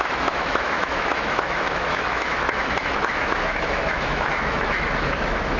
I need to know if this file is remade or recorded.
remade